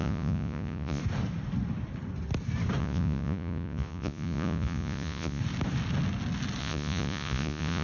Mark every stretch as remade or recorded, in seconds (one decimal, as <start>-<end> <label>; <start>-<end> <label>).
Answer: 0.0-1.0 remade; 1.0-2.8 recorded; 2.8-5.4 remade; 5.4-6.6 recorded; 6.6-7.8 remade